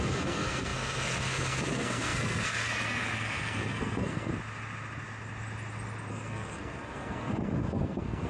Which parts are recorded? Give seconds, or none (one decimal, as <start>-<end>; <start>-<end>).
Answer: 4.3-6.1